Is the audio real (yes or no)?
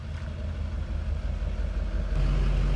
yes